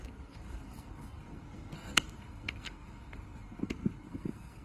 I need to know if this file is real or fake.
fake